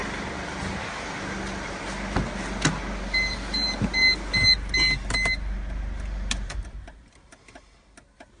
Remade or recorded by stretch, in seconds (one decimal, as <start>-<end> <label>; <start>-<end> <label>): 0.0-8.4 recorded